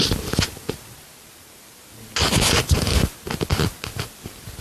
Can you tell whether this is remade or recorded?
recorded